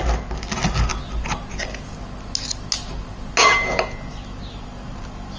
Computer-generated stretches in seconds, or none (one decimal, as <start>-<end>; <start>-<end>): none

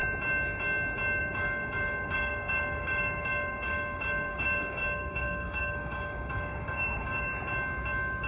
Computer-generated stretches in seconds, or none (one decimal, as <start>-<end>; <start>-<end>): 1.2-7.3

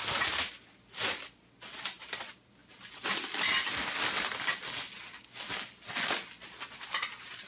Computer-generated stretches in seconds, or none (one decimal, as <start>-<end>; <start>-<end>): none

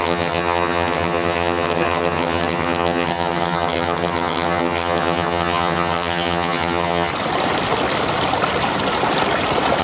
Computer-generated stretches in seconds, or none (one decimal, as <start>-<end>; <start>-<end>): 0.0-7.1

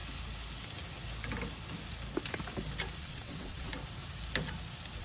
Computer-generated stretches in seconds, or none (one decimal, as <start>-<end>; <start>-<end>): 3.0-3.7

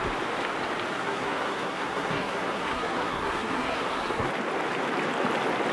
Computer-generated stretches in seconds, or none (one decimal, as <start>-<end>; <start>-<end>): 0.9-4.3

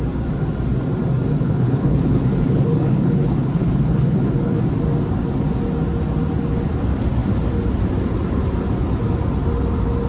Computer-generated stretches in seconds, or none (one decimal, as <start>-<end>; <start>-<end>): 1.3-4.6